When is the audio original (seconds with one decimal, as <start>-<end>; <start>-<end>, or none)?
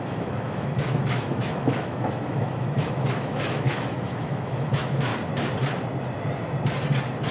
5.1-7.3